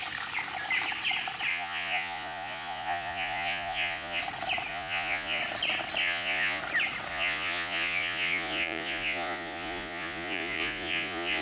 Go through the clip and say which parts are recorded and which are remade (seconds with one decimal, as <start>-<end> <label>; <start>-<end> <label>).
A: 0.0-1.5 recorded; 1.5-4.2 remade; 4.2-4.7 recorded; 4.7-5.4 remade; 5.4-6.0 recorded; 6.0-6.6 remade; 6.6-7.1 recorded; 7.1-11.4 remade